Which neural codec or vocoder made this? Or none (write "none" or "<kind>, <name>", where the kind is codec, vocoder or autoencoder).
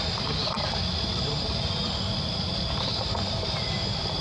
none